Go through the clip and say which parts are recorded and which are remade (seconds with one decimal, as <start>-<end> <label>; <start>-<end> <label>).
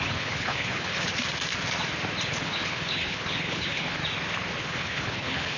0.0-1.1 remade; 1.1-2.3 recorded; 2.3-4.0 remade; 4.0-4.6 recorded; 4.6-5.6 remade